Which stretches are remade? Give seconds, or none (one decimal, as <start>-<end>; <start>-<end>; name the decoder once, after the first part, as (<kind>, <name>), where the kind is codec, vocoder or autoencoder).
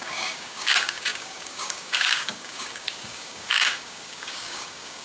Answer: 0.0-5.0 (codec, DAC)